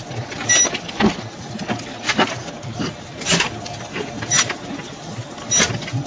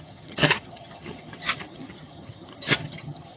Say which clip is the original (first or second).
first